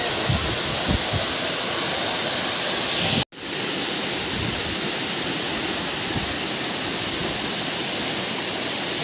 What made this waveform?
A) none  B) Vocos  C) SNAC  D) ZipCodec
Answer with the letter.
A